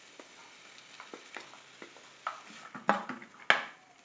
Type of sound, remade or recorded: recorded